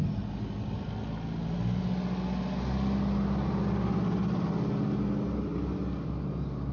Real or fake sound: real